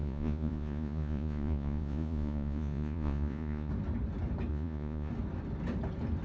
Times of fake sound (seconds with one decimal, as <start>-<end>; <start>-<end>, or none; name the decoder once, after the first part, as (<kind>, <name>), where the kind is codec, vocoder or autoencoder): 0.0-3.7 (vocoder, Vocos); 4.5-5.1